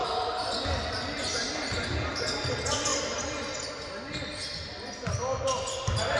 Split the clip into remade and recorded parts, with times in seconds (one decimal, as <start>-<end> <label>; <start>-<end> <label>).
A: 0.0-6.2 recorded